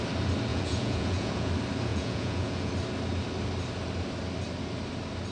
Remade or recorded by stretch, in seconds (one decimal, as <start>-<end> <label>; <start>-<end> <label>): 0.0-0.5 recorded; 0.5-1.5 remade; 1.5-1.9 recorded; 1.9-2.7 remade; 2.7-5.3 recorded